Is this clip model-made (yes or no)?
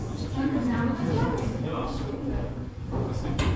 yes